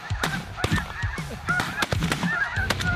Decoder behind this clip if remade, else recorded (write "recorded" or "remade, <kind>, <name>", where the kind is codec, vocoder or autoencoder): recorded